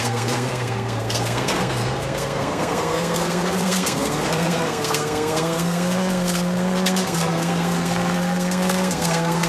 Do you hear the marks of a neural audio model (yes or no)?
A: yes